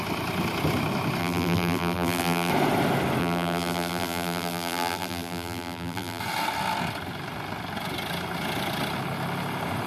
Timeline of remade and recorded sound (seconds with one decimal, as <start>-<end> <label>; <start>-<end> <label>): 0.0-1.2 recorded; 1.2-2.5 remade; 2.5-3.2 recorded; 3.2-6.2 remade; 6.2-9.9 recorded